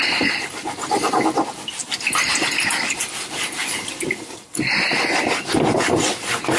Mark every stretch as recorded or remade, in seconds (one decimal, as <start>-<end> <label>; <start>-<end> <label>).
0.0-6.6 recorded